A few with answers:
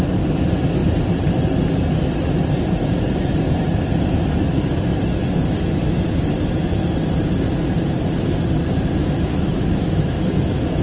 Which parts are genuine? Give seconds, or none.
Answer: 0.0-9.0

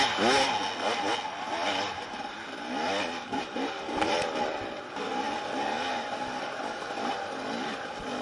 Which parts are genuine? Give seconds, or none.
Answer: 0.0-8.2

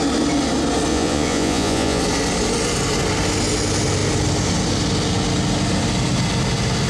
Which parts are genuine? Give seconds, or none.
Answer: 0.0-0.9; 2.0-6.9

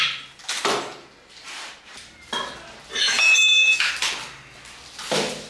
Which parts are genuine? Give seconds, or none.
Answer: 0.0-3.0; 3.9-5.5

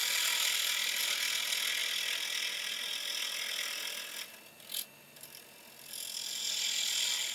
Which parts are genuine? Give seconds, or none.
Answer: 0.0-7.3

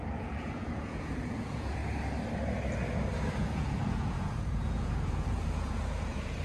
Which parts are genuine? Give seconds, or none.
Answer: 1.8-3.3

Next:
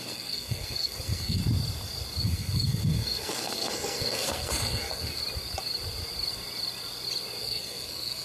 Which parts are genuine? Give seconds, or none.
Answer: 1.4-2.2; 5.2-7.4

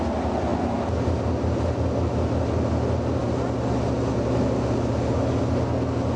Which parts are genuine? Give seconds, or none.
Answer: 0.0-6.2